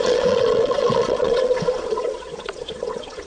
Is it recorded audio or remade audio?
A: remade